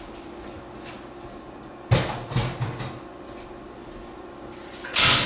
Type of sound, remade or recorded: recorded